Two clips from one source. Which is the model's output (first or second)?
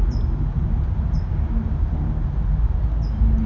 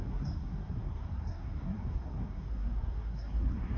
second